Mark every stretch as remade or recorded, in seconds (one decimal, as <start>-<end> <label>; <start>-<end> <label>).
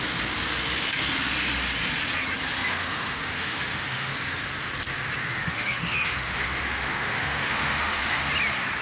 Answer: 0.0-2.6 recorded; 2.6-4.1 remade; 4.1-5.2 recorded; 5.2-8.3 remade; 8.3-8.8 recorded